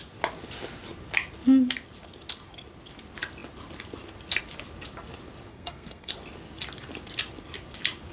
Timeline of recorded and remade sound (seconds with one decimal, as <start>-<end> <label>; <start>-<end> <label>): 0.0-5.5 recorded; 5.5-6.1 remade; 6.1-8.1 recorded